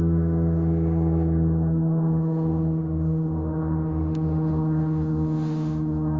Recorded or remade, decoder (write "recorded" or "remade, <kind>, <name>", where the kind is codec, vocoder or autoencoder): remade, autoencoder, DAC-VAE